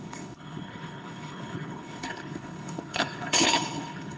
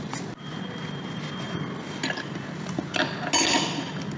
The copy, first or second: first